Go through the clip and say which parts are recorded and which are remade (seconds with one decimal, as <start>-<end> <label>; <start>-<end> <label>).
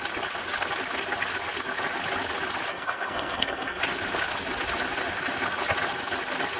0.0-2.7 recorded; 2.7-3.8 remade; 3.8-6.6 recorded